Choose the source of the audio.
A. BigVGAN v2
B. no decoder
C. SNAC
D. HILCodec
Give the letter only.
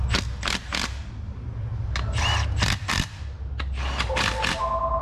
B